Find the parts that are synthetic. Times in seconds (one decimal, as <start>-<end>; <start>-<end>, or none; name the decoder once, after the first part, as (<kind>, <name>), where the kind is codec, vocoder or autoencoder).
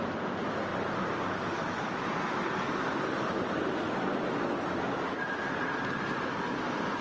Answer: none